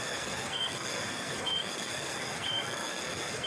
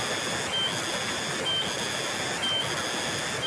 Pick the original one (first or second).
second